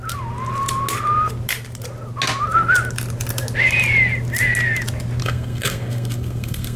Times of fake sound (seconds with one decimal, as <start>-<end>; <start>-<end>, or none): 5.2-6.8